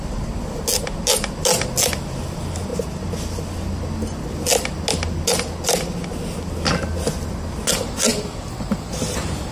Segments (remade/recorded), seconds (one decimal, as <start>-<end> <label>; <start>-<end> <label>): 0.0-9.5 recorded